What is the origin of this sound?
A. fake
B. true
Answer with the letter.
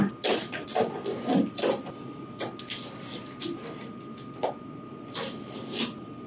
B